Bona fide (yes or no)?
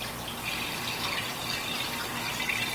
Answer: yes